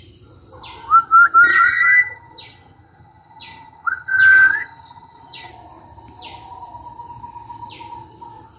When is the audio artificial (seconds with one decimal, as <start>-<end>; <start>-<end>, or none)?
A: 1.5-5.5

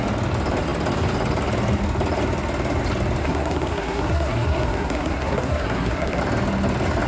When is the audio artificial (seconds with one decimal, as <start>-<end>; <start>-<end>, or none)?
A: 3.2-6.2